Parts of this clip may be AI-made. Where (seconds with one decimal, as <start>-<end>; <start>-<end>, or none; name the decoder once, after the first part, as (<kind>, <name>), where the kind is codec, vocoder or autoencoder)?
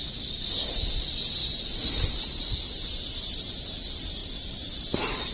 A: none